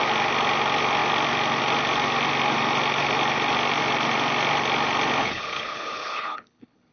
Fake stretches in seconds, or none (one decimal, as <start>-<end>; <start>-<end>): 5.2-6.9